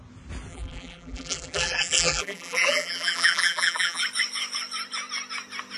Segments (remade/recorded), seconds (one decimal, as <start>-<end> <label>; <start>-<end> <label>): 0.0-0.5 recorded; 0.5-4.0 remade; 4.0-5.8 recorded